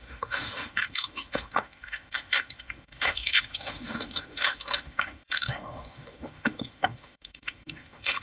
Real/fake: fake